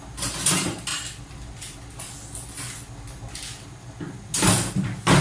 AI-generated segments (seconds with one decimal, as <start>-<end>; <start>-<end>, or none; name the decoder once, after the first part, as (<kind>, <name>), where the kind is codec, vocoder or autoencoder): none